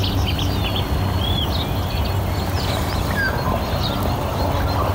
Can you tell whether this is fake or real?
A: real